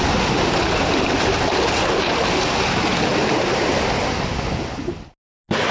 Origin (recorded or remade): recorded